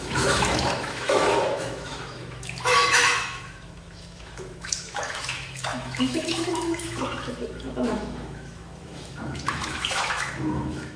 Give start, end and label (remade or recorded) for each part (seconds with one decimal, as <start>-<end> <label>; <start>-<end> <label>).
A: 0.0-11.0 remade